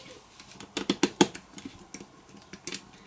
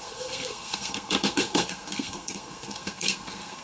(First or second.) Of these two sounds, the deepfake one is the second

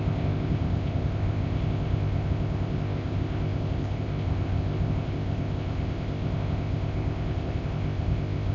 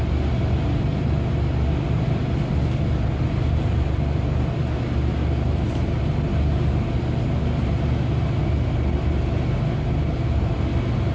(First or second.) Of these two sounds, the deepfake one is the first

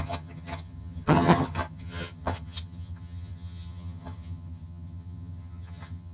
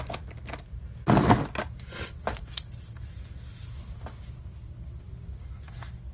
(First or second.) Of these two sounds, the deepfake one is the first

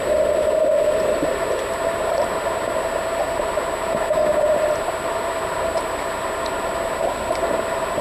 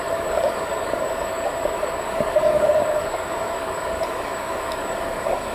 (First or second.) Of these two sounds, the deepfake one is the second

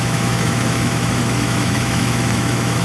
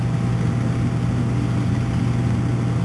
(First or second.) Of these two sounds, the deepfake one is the first